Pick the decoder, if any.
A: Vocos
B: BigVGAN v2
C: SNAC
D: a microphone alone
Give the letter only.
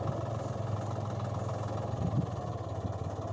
D